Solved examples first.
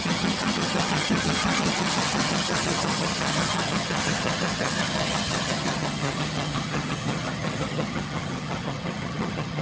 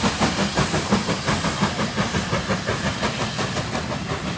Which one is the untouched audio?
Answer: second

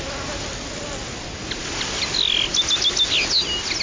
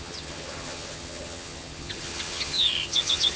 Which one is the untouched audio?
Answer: first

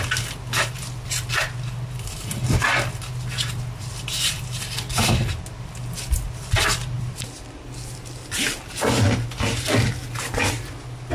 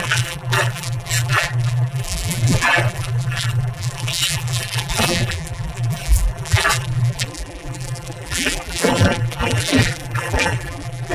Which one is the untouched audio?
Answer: first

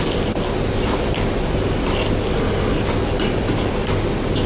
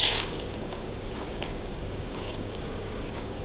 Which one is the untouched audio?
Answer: first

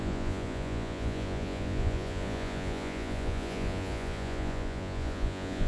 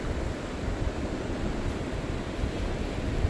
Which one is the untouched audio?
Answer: second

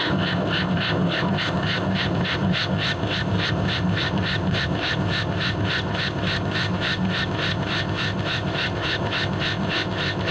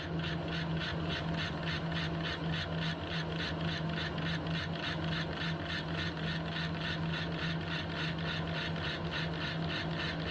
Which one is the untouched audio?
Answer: second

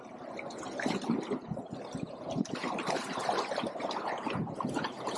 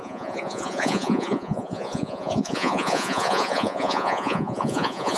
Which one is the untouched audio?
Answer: first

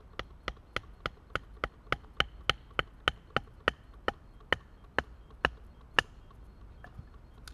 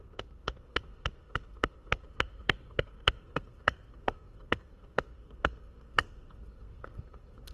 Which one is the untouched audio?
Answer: first